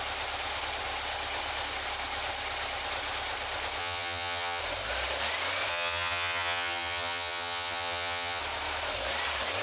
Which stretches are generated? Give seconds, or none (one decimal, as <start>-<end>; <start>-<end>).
3.8-4.6; 5.7-8.4